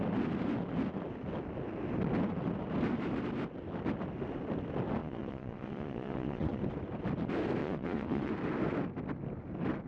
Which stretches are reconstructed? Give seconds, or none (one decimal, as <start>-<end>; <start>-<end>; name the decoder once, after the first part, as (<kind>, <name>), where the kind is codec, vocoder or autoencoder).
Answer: 5.0-6.6 (vocoder, Vocos); 7.6-8.3